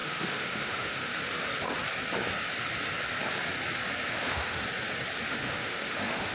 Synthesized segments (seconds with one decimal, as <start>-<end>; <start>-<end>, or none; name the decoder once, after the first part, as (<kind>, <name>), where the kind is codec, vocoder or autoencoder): 0.0-1.1 (autoencoder, DAC-VAE); 4.1-4.6; 5.3-6.3